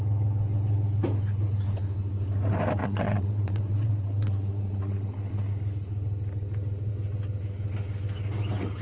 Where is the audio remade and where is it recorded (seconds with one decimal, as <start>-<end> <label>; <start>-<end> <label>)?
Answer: 0.0-2.8 recorded; 2.8-5.5 remade; 5.5-8.8 recorded